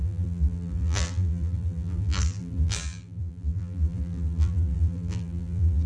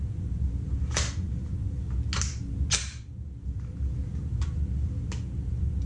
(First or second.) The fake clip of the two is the first